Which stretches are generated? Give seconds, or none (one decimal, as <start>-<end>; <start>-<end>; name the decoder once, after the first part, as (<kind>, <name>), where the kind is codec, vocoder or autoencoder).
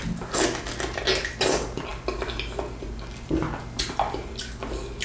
none